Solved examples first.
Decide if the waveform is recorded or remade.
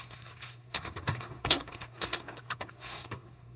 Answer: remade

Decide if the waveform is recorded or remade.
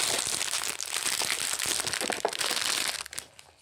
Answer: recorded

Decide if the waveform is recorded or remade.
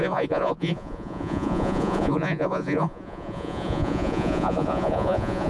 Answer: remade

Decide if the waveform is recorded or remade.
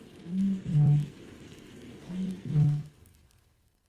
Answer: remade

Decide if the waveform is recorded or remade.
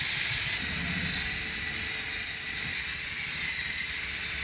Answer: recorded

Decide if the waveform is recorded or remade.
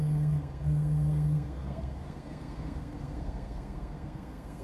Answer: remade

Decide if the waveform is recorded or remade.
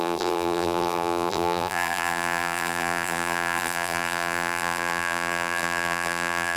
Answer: remade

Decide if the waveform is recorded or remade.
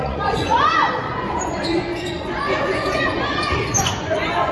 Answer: remade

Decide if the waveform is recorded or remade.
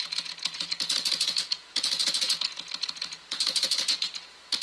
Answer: remade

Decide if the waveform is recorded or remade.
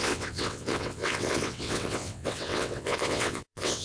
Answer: remade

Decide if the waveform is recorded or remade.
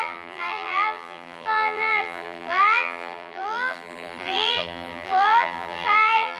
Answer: remade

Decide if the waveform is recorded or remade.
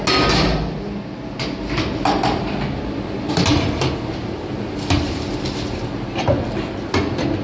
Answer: recorded